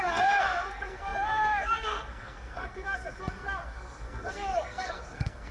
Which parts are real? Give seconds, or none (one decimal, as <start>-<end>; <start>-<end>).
none